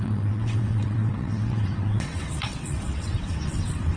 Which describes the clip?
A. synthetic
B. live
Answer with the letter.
A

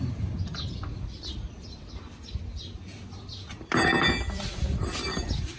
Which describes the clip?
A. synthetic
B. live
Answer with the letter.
B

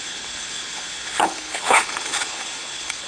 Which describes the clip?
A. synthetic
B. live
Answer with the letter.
A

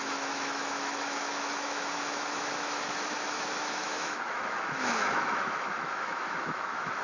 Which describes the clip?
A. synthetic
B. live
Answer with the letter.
A